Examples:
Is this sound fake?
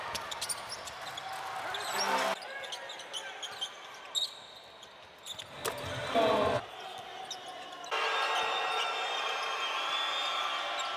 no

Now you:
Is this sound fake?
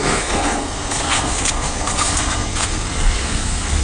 yes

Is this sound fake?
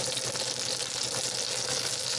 no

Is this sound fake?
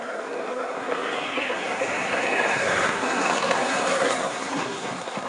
yes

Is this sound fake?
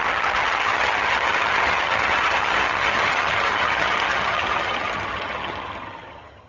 yes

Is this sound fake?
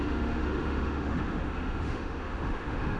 yes